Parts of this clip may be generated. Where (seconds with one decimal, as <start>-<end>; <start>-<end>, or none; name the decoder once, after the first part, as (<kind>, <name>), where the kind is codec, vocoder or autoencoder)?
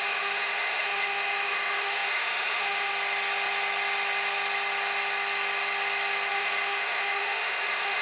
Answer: 0.0-2.9 (autoencoder, DAC-VAE); 6.3-8.0